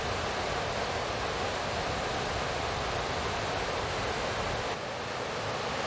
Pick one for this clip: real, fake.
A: real